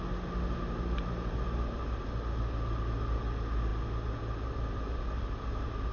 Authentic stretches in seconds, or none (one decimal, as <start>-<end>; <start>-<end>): 0.0-5.9